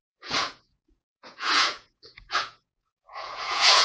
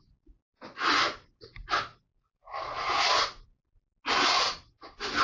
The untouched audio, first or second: second